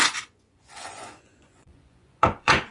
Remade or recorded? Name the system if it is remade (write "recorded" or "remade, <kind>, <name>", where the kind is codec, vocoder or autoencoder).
remade, vocoder, Vocos